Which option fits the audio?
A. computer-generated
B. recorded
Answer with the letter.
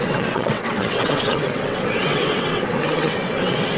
A